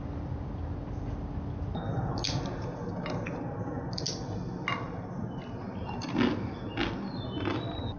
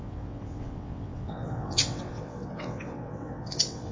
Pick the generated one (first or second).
second